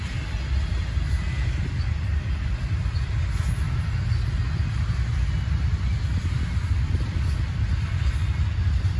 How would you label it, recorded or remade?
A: recorded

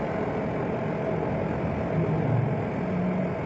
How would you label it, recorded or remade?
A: recorded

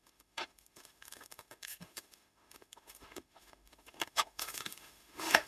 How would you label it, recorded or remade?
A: remade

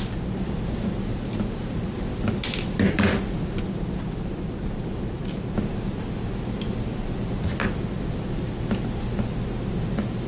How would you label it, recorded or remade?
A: recorded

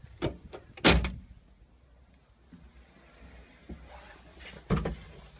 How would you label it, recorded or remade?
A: recorded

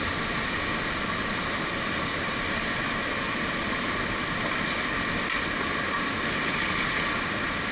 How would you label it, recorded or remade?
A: recorded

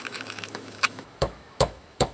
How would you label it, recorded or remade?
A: remade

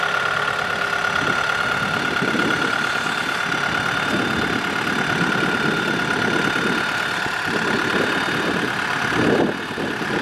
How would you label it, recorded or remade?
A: recorded